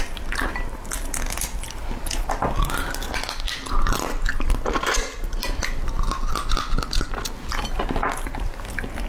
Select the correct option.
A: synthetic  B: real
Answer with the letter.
B